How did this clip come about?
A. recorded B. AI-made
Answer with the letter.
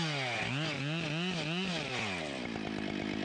A